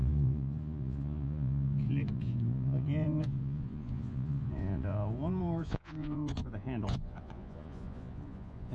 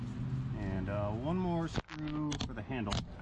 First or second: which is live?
second